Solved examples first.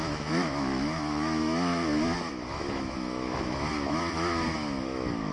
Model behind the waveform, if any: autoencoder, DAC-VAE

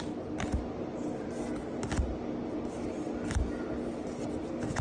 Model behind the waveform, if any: none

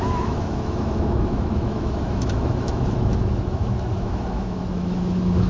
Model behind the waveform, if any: autoencoder, DAC-VAE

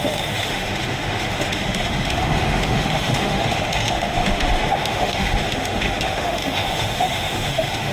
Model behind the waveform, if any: autoencoder, DAC-VAE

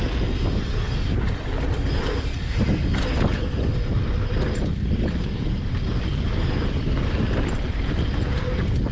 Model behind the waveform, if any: none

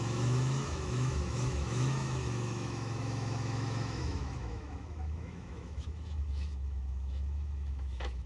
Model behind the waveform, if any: autoencoder, DAC-VAE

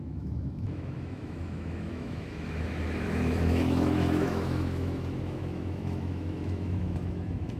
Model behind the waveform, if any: autoencoder, DAC-VAE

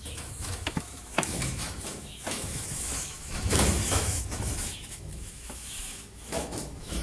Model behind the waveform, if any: autoencoder, DAC-VAE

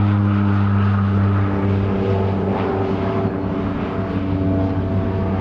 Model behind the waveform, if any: none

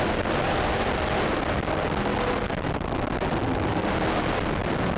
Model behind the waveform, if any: none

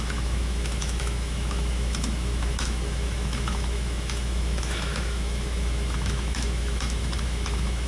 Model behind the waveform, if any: autoencoder, DAC-VAE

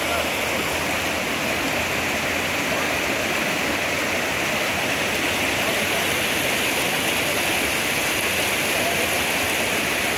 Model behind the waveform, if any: none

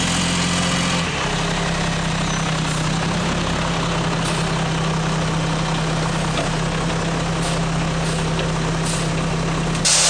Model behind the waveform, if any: none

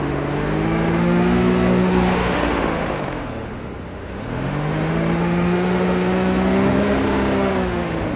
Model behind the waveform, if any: autoencoder, DAC-VAE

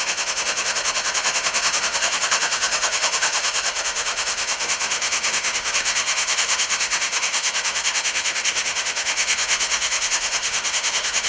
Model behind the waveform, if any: autoencoder, DAC-VAE